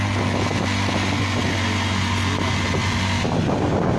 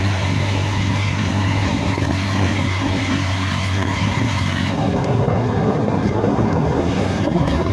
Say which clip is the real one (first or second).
first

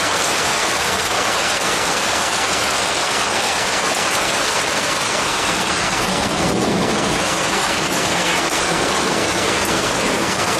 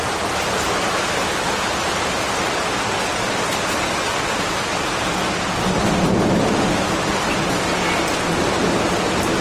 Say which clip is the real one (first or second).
second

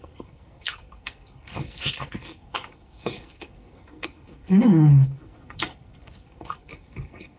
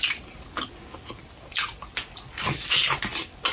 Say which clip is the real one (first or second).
second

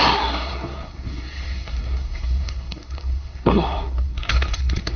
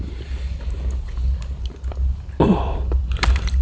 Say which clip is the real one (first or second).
second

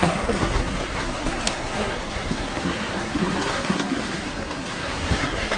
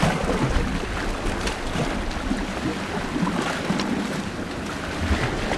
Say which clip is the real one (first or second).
second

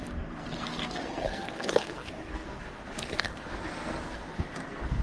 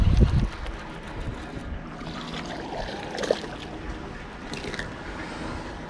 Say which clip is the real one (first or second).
second